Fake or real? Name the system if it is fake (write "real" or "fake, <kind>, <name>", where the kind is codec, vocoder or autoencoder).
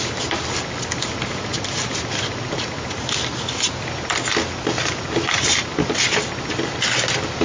real